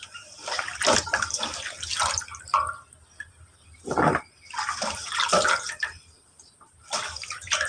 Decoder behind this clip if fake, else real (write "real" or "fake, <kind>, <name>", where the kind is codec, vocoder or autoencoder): real